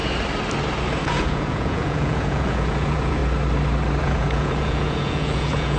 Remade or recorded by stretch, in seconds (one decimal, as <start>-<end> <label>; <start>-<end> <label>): 0.0-1.0 recorded; 1.0-3.2 remade; 3.2-4.0 recorded; 4.0-5.8 remade